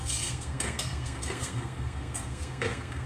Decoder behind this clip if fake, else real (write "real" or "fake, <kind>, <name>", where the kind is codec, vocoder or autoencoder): fake, codec, SNAC